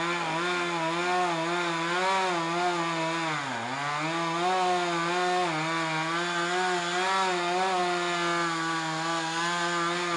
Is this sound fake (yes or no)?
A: no